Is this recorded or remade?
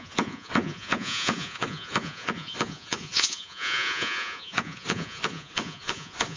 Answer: remade